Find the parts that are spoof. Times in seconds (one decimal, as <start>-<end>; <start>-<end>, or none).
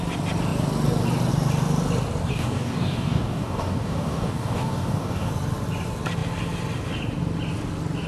2.3-5.3